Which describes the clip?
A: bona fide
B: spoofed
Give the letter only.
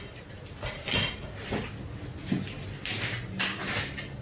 A